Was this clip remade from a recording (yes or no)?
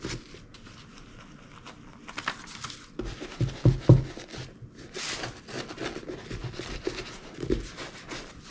no